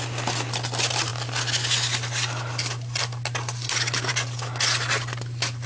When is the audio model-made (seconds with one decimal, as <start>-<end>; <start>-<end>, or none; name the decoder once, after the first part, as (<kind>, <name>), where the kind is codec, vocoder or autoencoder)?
none